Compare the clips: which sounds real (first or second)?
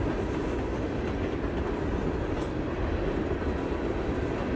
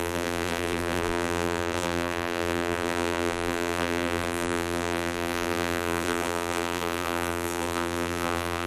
first